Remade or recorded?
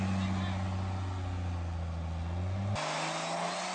recorded